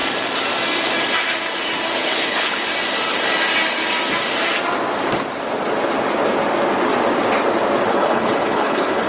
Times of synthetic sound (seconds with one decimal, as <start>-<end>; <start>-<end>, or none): 1.9-2.7; 7.9-9.1